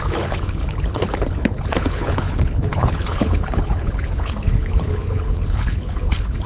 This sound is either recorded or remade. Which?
remade